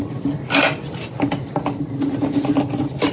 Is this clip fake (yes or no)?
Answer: no